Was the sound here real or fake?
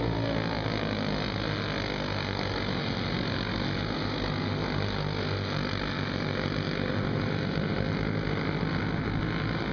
real